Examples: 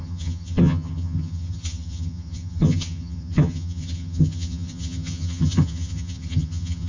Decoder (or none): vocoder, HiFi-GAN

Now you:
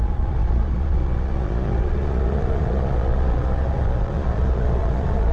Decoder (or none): vocoder, Vocos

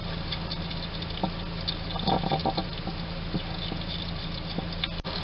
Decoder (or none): none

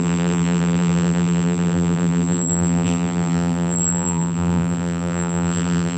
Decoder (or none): vocoder, BigVGAN v2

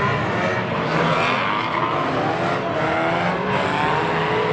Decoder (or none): none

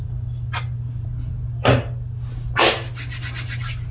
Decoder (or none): none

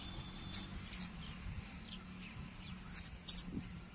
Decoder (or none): none